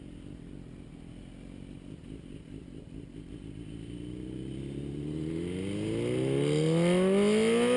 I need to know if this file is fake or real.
real